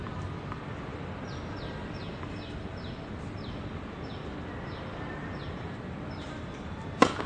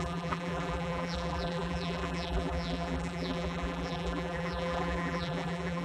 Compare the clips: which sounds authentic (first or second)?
first